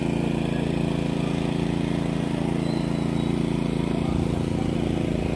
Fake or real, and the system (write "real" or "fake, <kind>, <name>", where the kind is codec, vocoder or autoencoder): real